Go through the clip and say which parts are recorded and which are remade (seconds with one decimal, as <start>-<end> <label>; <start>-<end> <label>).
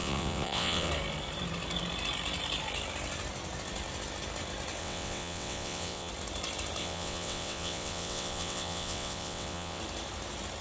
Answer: 0.0-0.9 remade; 0.9-4.8 recorded; 4.8-6.1 remade; 6.1-6.8 recorded; 6.8-9.8 remade; 9.8-10.6 recorded